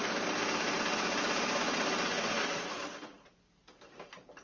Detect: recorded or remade recorded